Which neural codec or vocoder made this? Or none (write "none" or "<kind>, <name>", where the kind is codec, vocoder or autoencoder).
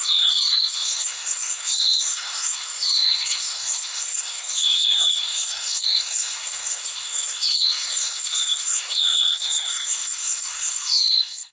codec, SNAC